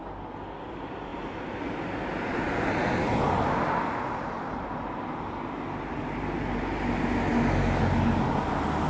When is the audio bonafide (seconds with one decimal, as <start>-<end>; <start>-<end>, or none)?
0.0-8.9